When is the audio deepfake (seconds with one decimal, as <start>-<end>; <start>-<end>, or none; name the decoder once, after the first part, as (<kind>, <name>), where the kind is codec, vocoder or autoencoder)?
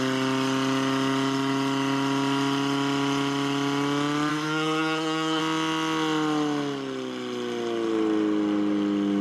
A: 4.3-5.4 (codec, SNAC)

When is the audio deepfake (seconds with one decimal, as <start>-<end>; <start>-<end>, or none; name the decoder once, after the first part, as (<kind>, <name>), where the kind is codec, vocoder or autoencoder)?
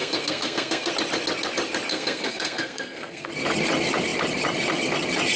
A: 0.0-0.9 (codec, SNAC); 1.9-3.3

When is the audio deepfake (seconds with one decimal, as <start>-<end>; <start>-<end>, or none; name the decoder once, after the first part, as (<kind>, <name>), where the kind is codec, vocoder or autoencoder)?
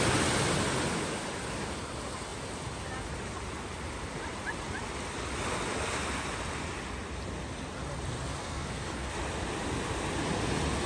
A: 8.4-9.1 (codec, SNAC)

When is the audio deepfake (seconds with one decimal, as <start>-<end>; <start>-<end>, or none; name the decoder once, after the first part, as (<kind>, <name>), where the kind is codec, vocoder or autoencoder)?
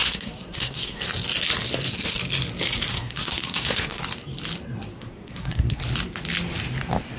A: 0.0-1.0 (codec, SNAC); 2.9-4.0; 4.9-5.8